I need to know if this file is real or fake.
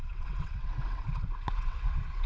fake